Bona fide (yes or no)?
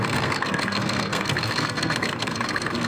no